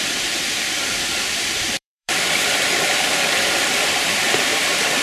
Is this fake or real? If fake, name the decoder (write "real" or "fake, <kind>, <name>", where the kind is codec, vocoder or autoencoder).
fake, vocoder, BigVGAN v2